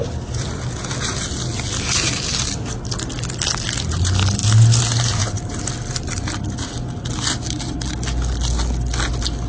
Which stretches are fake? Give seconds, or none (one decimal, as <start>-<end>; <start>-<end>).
4.4-5.7